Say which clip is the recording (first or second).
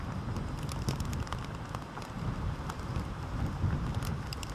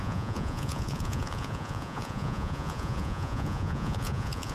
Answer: first